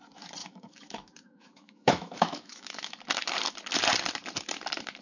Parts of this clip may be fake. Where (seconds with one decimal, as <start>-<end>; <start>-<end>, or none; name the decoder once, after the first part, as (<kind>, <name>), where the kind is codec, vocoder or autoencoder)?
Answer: 0.4-3.0 (autoencoder, DAC-VAE)